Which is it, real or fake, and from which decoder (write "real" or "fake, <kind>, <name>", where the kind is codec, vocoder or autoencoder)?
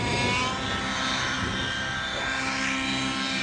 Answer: real